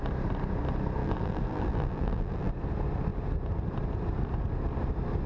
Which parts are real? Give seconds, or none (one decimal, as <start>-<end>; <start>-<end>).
0.0-1.0; 2.5-5.3